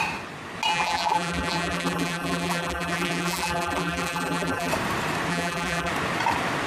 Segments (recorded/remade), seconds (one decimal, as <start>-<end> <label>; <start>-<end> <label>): 0.0-0.7 recorded; 0.7-4.7 remade; 4.7-5.3 recorded; 5.3-5.9 remade; 5.9-6.7 recorded